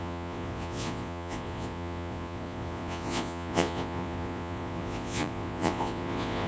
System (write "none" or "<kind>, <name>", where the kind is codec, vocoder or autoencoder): vocoder, Vocos